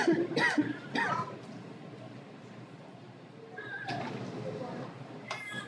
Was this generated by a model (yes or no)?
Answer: no